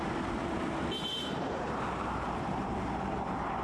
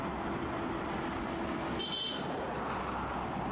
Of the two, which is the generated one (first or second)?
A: first